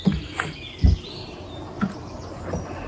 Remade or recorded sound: recorded